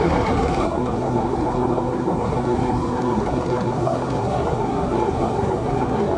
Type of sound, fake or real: fake